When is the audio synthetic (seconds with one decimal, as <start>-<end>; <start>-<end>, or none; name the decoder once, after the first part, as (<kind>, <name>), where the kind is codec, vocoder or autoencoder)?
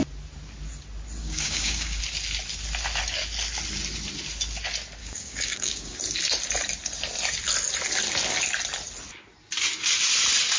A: 1.2-2.0 (codec, DAC); 5.0-6.0